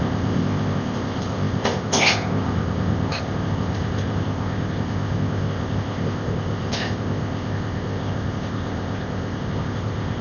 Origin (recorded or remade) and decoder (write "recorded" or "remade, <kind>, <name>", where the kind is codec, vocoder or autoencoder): remade, codec, ZipCodec